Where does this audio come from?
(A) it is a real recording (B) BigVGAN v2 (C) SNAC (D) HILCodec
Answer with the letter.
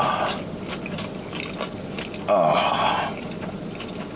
A